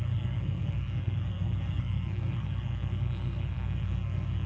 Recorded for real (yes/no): no